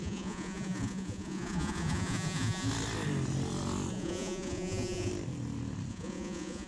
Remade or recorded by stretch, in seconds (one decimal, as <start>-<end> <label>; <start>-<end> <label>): 0.0-2.7 remade; 2.7-3.9 recorded; 3.9-5.1 remade; 5.1-5.9 recorded; 5.9-6.7 remade